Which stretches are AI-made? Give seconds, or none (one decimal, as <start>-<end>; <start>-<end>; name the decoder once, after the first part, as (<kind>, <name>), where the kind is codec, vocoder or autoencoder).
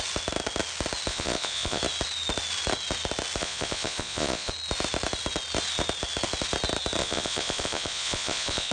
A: 1.1-1.8 (vocoder, Vocos); 3.4-4.5; 7.0-8.7